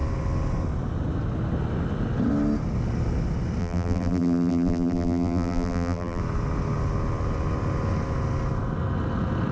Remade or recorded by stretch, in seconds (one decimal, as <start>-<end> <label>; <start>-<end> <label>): 0.0-3.6 recorded; 3.6-6.2 remade; 6.2-9.5 recorded